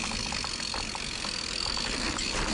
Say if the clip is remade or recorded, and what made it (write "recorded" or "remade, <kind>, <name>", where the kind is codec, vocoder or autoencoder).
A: recorded